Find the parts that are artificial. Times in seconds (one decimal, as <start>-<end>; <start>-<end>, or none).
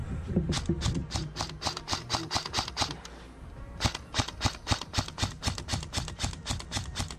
0.0-0.6; 1.0-2.1